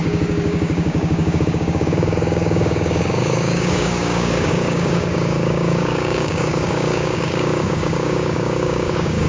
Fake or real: fake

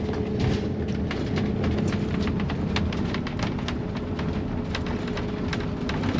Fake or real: real